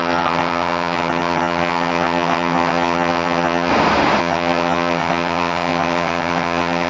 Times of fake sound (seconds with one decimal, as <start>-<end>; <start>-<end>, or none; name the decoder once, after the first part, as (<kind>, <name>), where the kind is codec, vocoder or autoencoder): 0.0-3.7 (vocoder, HiFi-GAN); 4.2-6.9